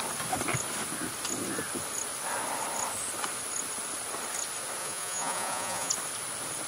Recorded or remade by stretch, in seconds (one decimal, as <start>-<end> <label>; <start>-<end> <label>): 0.0-4.8 recorded; 4.8-5.9 remade; 5.9-6.7 recorded